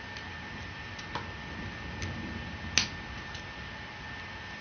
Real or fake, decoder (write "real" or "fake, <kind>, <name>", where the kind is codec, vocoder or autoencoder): real